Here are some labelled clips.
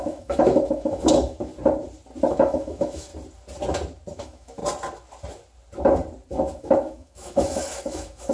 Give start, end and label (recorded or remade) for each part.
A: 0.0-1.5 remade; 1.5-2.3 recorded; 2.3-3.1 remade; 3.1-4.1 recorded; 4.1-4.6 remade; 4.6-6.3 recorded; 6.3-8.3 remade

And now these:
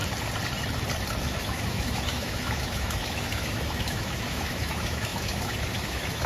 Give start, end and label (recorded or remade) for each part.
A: 0.0-1.2 recorded; 1.2-6.3 remade

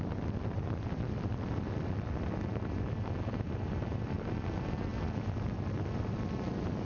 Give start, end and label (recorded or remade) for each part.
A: 0.0-6.8 recorded